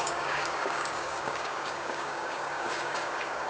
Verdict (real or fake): fake